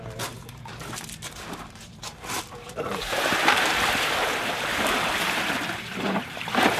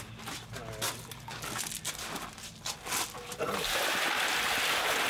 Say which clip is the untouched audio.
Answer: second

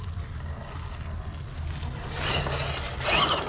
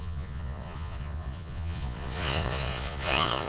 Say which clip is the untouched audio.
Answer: first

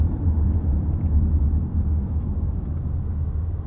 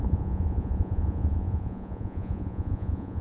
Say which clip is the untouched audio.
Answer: first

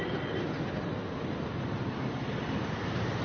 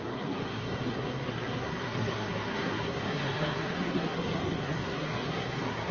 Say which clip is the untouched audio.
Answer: first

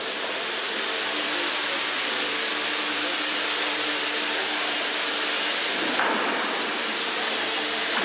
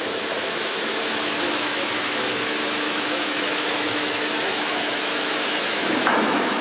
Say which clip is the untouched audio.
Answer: first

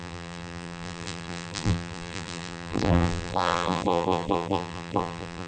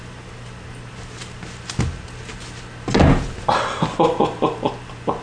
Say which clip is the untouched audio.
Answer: second